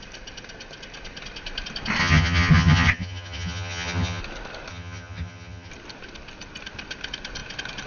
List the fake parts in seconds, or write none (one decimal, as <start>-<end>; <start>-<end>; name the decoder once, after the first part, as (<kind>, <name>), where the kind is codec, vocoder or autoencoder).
2.0-4.2 (vocoder, HiFi-GAN); 4.7-5.7